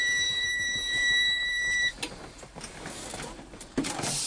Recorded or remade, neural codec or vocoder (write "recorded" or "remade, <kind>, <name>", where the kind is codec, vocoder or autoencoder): remade, vocoder, BigVGAN v2